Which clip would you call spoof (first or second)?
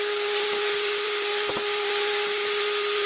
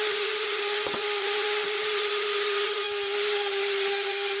second